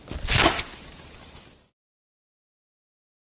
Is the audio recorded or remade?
recorded